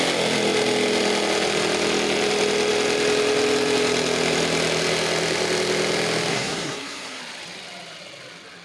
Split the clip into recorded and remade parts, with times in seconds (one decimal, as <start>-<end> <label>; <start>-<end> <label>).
0.0-6.3 recorded; 6.3-7.2 remade; 7.2-8.6 recorded